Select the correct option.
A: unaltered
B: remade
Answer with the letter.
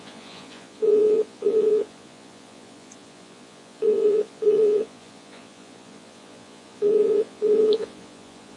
B